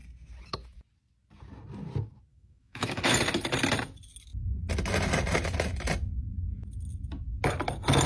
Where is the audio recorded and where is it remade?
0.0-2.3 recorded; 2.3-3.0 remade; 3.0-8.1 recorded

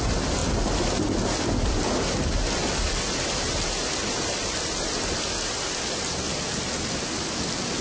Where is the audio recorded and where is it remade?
0.0-7.8 recorded

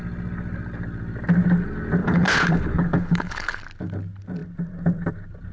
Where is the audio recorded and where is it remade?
0.0-2.0 recorded; 2.0-3.6 remade; 3.6-5.5 recorded

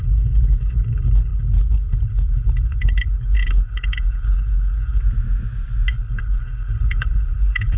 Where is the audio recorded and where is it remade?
0.0-5.0 remade; 5.0-5.9 recorded; 5.9-7.8 remade

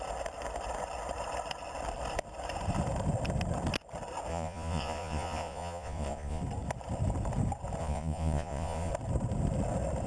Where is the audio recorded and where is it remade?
0.0-4.3 recorded; 4.3-6.4 remade; 6.4-7.8 recorded; 7.8-8.9 remade; 8.9-10.1 recorded